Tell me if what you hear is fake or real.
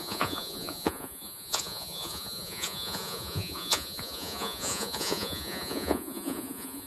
fake